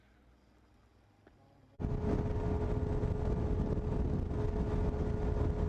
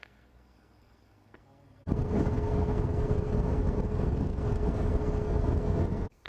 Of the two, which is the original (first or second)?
first